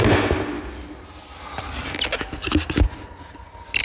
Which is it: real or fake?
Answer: real